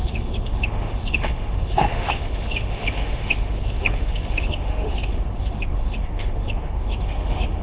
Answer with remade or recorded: remade